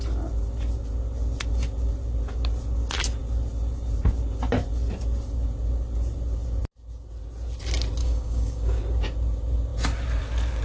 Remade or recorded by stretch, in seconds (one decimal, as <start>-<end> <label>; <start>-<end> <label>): 0.0-8.0 recorded; 8.0-8.8 remade; 8.8-10.6 recorded